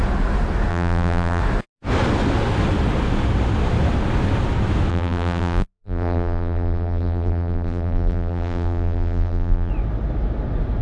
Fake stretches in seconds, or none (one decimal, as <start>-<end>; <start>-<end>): 0.7-1.4; 4.9-9.7